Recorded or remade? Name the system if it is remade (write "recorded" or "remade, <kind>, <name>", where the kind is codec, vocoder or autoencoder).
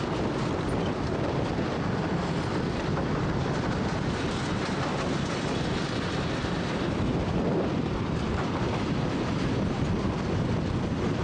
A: recorded